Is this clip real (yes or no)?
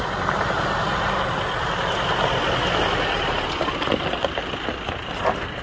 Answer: yes